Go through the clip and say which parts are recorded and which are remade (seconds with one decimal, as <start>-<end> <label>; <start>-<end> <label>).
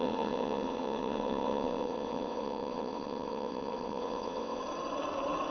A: 0.0-4.6 remade; 4.6-5.5 recorded